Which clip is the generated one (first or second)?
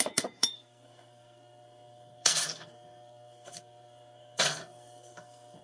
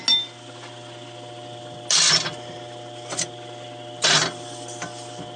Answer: first